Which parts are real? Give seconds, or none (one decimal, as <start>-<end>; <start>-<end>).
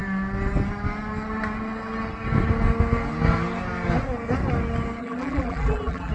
0.0-5.0